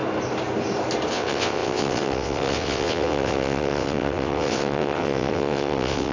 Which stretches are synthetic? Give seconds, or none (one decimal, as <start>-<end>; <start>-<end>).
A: 1.1-6.1